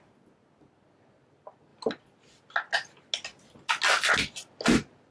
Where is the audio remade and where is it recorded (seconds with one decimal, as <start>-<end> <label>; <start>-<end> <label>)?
0.0-5.1 recorded